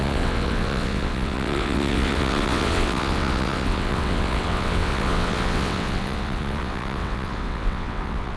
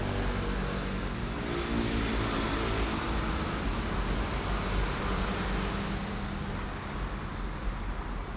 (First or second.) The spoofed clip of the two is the first